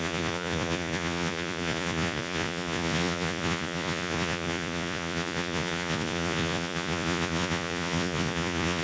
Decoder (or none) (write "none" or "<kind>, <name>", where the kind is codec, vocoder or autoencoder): vocoder, Vocos